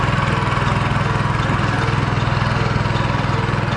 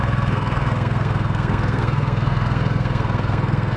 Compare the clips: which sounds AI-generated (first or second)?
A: second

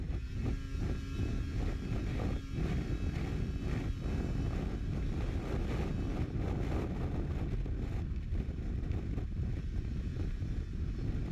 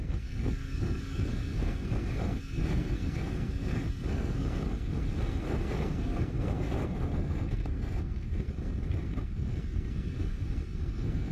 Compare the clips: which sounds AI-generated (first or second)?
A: second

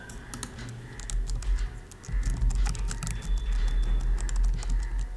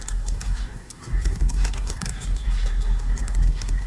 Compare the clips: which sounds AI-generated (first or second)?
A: second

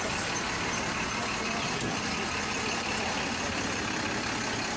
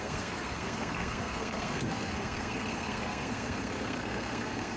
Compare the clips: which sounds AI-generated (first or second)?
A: second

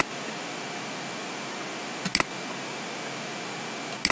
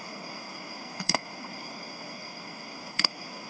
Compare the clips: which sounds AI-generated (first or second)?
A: second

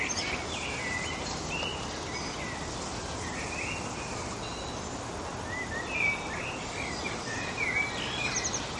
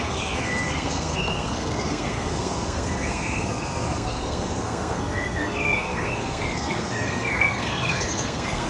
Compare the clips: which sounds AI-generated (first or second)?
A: second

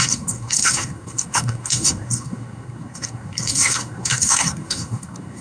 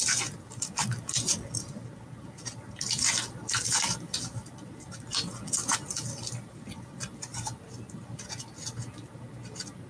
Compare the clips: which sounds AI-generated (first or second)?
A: first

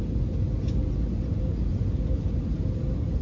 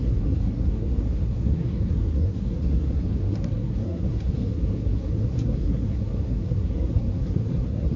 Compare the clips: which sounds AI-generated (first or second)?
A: second